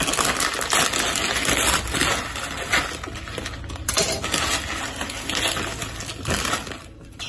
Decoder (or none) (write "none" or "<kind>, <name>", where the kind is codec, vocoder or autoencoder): none